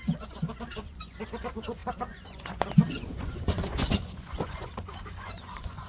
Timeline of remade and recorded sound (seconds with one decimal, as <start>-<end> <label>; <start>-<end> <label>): 0.0-5.9 remade